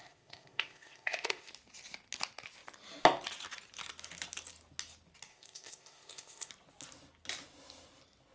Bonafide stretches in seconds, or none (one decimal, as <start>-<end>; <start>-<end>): 1.5-5.3; 6.5-8.3

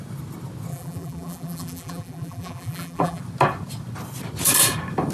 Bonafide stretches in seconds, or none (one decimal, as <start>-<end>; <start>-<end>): 0.0-0.7; 3.2-5.1

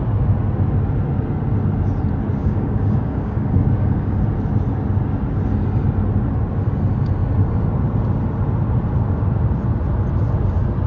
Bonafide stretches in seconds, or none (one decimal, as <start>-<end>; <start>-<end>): 0.0-2.4; 4.2-10.9

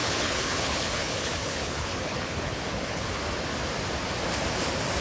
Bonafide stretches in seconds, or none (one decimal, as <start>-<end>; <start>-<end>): 3.0-5.0